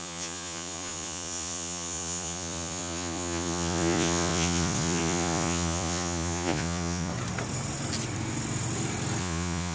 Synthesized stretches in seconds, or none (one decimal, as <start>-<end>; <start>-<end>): 0.0-7.1; 9.2-9.7